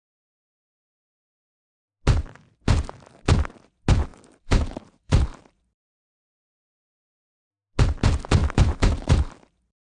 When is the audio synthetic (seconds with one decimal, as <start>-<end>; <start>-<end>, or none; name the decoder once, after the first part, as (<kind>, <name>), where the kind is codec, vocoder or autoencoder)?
4.1-7.4 (vocoder, BigVGAN v2); 8.4-10.0